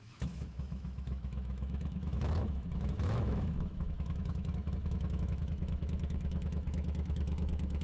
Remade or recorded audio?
remade